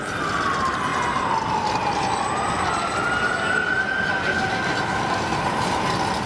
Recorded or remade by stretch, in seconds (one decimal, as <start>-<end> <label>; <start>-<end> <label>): 0.0-6.3 recorded

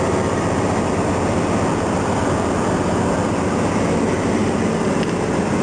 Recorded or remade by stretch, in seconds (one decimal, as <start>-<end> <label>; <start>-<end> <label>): 0.0-5.6 recorded

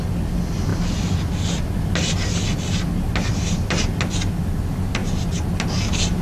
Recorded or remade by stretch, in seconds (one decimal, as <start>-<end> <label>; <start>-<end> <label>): 0.0-6.2 recorded

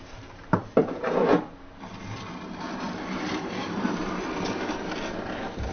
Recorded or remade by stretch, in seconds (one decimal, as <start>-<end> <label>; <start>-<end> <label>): 0.0-1.3 remade; 1.3-2.3 recorded; 2.3-5.7 remade

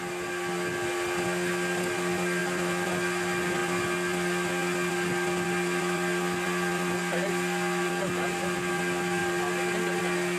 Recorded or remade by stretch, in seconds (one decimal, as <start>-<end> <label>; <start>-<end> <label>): 0.0-2.4 recorded; 2.4-2.9 remade; 2.9-9.2 recorded; 9.2-10.0 remade; 10.0-10.4 recorded